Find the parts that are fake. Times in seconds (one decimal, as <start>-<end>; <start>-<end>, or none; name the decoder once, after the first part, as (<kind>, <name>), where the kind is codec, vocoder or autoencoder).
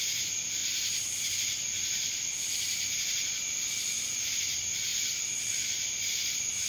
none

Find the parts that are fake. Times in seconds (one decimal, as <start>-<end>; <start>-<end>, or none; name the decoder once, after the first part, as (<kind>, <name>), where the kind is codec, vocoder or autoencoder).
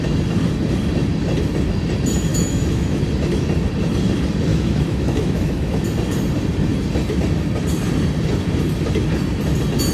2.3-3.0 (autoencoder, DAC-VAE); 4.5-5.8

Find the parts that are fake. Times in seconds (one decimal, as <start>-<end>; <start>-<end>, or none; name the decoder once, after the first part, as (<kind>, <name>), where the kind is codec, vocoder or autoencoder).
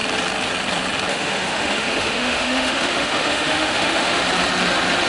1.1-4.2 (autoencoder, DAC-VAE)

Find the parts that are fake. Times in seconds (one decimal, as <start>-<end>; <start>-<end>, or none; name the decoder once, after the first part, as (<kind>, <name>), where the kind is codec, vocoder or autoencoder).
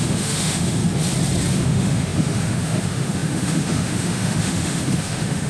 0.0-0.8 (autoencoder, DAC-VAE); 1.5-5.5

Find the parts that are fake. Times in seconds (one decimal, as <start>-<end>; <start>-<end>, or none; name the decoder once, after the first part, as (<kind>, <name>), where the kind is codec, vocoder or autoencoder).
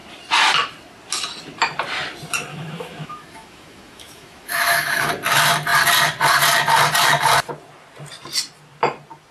2.5-5.1 (autoencoder, DAC-VAE)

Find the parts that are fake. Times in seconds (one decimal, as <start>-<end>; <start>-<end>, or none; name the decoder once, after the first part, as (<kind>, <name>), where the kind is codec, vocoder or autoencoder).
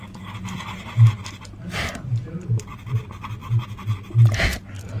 none